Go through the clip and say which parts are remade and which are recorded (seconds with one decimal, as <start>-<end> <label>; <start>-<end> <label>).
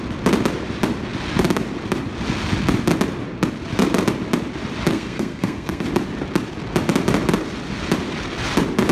0.0-4.9 recorded; 4.9-5.8 remade; 5.8-8.9 recorded